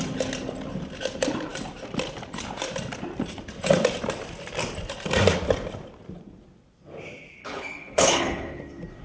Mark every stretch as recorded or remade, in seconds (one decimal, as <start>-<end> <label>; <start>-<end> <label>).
0.0-7.4 recorded; 7.4-8.6 remade; 8.6-9.0 recorded